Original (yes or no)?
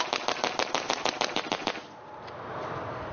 yes